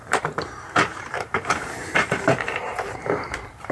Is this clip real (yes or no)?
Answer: no